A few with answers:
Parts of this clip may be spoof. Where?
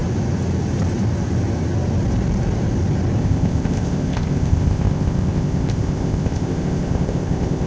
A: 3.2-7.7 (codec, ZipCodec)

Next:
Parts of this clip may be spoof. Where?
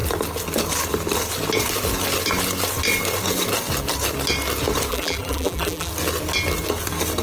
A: 4.9-5.9 (vocoder, BigVGAN v2)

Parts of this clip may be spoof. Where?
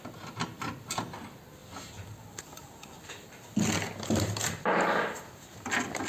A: none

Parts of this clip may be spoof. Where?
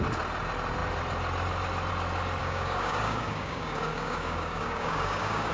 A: 2.4-5.5 (codec, DAC)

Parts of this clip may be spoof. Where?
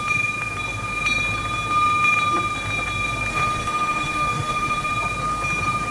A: 3.3-4.9 (autoencoder, DAC-VAE)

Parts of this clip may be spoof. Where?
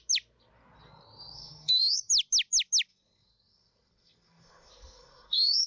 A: 1.2-2.1 (codec, SNAC); 2.9-5.7